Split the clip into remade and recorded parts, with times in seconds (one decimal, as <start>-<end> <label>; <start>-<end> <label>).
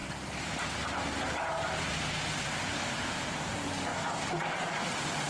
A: 0.0-1.9 remade; 1.9-2.7 recorded; 2.7-3.5 remade; 3.5-3.9 recorded; 3.9-5.3 remade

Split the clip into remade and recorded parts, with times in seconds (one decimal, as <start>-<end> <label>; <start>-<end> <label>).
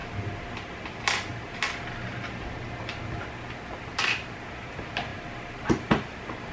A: 0.0-0.8 remade; 0.8-1.3 recorded; 1.3-2.6 remade; 2.6-5.1 recorded; 5.1-6.5 remade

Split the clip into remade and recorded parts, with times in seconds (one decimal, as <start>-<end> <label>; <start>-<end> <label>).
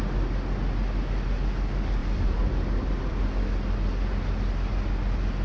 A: 0.0-2.0 recorded; 2.0-4.1 remade; 4.1-5.4 recorded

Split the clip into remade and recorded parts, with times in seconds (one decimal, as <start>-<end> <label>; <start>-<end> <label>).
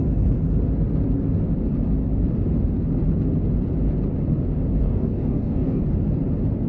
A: 0.0-4.8 recorded; 4.8-5.8 remade; 5.8-6.7 recorded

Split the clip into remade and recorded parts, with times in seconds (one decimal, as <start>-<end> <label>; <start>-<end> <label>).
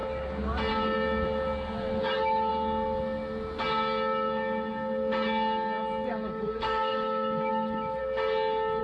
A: 0.0-2.0 recorded; 2.0-2.5 remade; 2.5-6.1 recorded; 6.1-8.0 remade; 8.0-8.8 recorded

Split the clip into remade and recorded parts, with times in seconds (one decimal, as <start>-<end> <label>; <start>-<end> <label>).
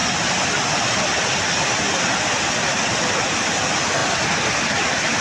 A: 0.0-5.2 recorded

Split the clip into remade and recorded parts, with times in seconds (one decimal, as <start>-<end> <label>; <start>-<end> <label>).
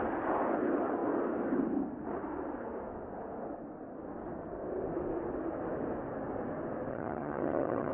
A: 0.0-6.9 recorded; 6.9-7.9 remade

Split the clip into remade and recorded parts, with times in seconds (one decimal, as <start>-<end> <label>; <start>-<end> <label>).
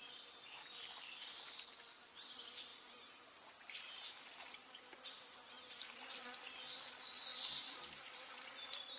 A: 0.0-2.7 recorded; 2.7-4.1 remade; 4.1-4.6 recorded; 4.6-5.9 remade; 5.9-7.3 recorded; 7.3-8.2 remade; 8.2-9.0 recorded